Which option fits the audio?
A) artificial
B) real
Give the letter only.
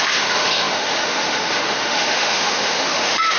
A